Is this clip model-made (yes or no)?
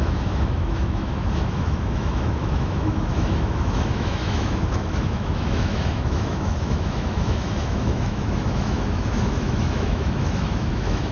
yes